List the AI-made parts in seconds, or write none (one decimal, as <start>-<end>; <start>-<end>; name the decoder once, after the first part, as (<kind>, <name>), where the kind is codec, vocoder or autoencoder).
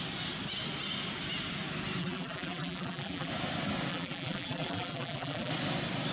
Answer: 2.0-3.3 (vocoder, BigVGAN v2); 3.9-5.5